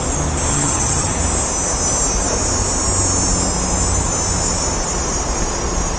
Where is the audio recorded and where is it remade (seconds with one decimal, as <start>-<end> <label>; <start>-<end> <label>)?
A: 0.0-0.5 recorded; 0.5-1.1 remade; 1.1-6.0 recorded